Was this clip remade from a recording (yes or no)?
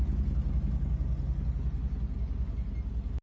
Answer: no